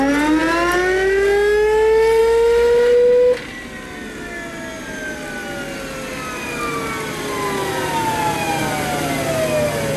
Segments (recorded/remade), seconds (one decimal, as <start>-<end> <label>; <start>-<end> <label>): 0.0-10.0 recorded